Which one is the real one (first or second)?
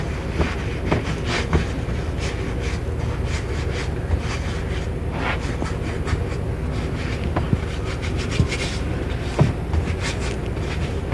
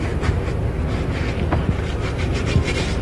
first